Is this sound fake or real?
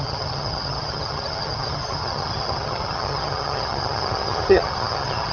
fake